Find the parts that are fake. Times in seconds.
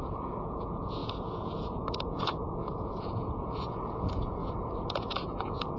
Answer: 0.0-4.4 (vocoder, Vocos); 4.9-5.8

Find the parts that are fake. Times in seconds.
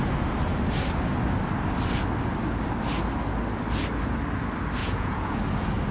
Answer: 4.8-5.4 (vocoder, Vocos)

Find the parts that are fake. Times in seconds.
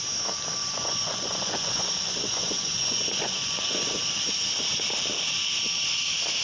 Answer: 0.6-4.0 (vocoder, Vocos)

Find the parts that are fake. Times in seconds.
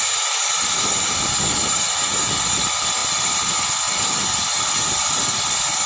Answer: none